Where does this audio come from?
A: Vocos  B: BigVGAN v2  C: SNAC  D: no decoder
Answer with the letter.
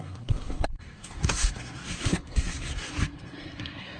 C